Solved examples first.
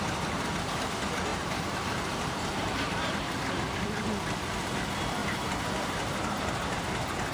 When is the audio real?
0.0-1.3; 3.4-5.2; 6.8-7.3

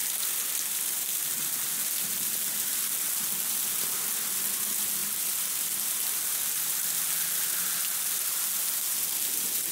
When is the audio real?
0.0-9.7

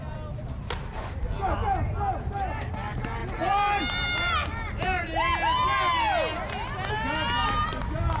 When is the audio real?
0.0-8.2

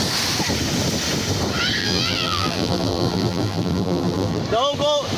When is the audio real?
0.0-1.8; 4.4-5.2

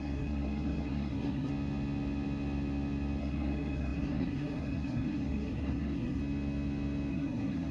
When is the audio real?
1.5-3.2; 6.2-7.1

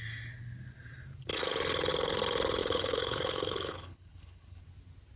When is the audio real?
0.0-2.6; 4.6-5.2